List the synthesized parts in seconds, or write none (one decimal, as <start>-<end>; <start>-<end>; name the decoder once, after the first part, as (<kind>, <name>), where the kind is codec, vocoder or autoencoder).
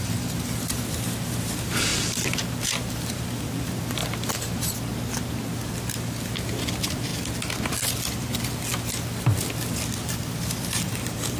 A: 0.0-4.0 (vocoder, BigVGAN v2); 6.4-7.1; 10.0-11.4